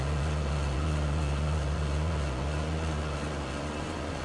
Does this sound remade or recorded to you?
remade